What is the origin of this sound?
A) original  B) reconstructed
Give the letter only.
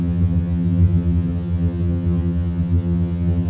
B